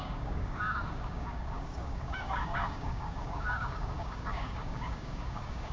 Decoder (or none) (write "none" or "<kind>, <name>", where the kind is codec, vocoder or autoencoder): codec, DAC